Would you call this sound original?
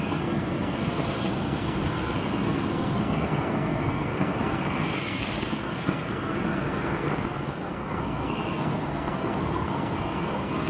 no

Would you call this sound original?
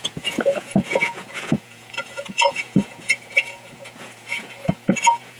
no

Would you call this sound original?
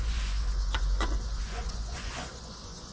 no